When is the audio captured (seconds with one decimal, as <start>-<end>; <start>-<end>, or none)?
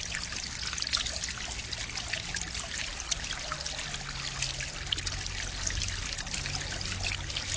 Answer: 0.0-7.6